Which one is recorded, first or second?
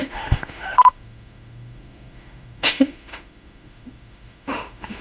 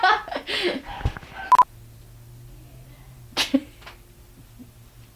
second